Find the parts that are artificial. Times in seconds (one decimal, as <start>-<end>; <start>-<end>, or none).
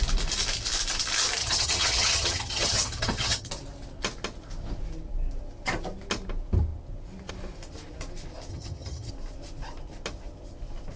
1.4-3.5; 8.5-9.1